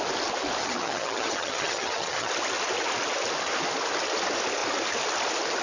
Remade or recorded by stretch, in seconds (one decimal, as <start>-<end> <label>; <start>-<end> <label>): 0.0-0.6 recorded; 0.6-2.3 remade; 2.3-5.6 recorded